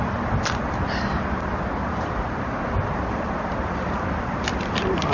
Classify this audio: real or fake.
real